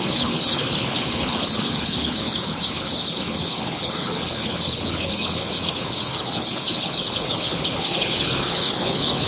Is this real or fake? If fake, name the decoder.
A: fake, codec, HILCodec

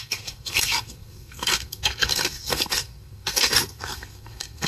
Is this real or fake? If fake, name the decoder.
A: fake, codec, SNAC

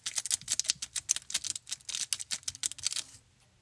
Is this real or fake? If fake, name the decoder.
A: real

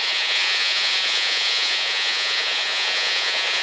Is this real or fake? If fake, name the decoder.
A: fake, vocoder, Vocos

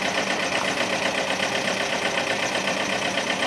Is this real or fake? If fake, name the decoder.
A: real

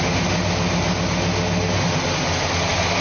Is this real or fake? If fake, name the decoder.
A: real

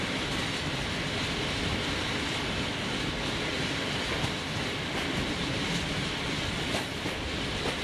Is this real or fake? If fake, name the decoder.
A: real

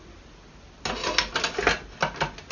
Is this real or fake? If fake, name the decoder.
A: real